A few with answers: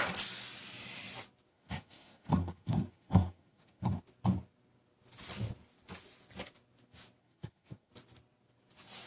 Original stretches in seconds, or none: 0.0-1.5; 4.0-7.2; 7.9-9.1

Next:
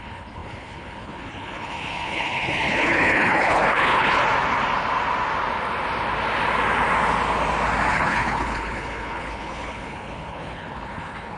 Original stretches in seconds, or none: 4.2-7.9

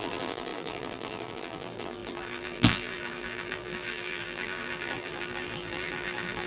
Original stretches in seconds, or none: none